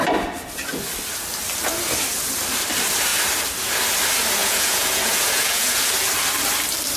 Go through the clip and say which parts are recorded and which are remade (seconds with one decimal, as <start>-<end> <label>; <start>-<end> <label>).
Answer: 0.0-4.4 recorded; 4.4-5.9 remade; 5.9-7.0 recorded